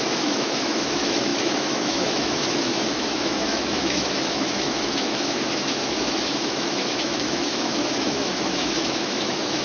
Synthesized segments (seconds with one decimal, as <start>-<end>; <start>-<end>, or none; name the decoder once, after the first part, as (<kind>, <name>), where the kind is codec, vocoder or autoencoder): 0.0-9.6 (autoencoder, DAC-VAE)